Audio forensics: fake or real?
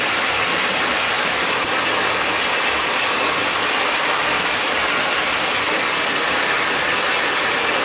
real